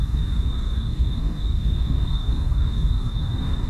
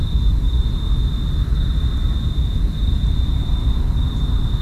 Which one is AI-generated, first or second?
first